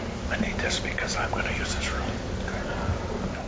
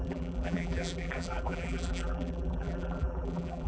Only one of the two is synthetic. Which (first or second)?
second